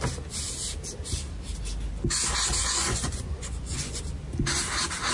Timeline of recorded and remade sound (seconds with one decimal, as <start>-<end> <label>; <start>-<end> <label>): 0.0-2.6 recorded; 2.6-4.0 remade; 4.0-5.1 recorded